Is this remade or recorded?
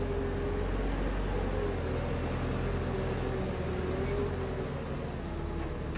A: recorded